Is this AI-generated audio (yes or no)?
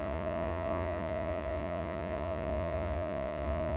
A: yes